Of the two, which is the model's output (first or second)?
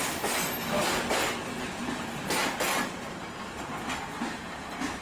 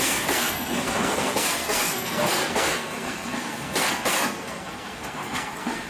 second